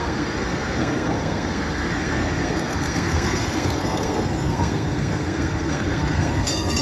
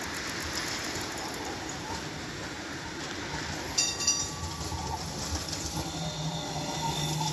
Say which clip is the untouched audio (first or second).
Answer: second